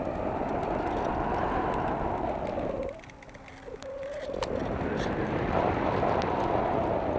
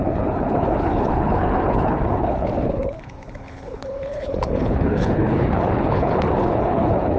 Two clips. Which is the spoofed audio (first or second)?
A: second